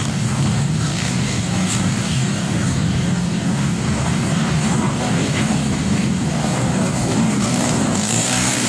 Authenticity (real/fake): fake